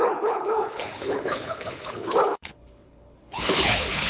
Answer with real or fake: fake